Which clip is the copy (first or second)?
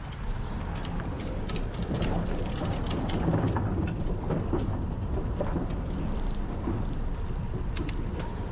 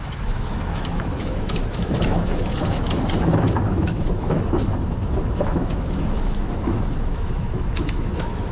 second